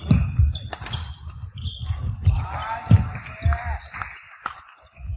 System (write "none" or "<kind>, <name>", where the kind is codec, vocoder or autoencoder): none